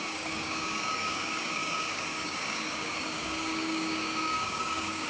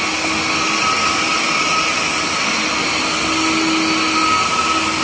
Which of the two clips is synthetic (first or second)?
first